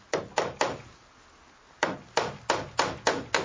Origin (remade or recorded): recorded